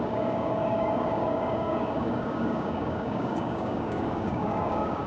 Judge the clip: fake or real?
fake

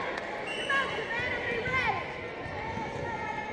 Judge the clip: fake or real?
real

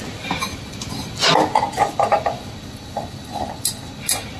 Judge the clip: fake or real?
real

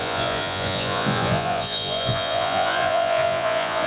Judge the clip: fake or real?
fake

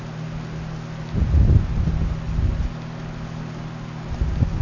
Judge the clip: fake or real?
real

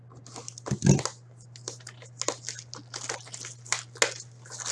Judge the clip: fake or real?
real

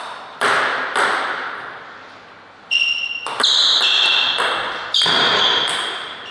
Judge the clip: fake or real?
real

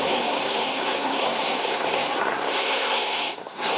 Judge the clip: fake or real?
fake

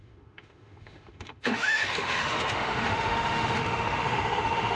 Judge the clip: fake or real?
fake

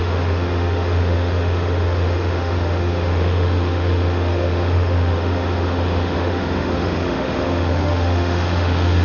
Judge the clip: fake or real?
fake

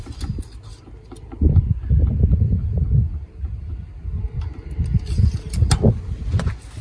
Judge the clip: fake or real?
real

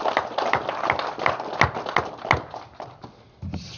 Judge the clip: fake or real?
real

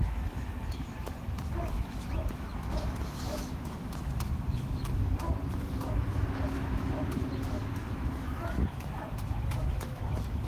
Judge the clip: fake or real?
fake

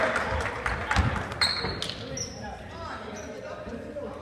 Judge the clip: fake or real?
real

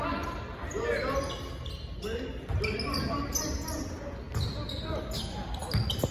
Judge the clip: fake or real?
real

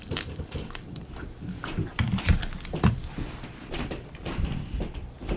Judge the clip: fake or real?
fake